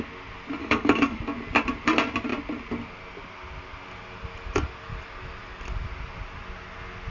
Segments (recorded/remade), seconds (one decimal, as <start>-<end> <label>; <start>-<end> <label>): 0.0-0.6 recorded; 0.6-1.2 remade; 1.2-7.1 recorded